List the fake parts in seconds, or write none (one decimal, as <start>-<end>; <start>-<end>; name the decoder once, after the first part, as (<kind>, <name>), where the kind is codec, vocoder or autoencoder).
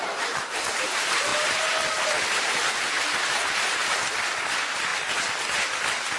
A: 0.0-4.9 (vocoder, BigVGAN v2)